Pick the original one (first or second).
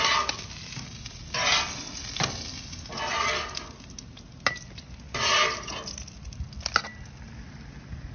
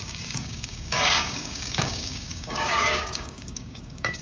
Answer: first